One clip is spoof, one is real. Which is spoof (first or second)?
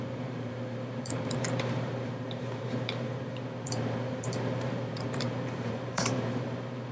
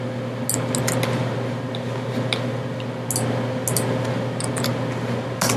first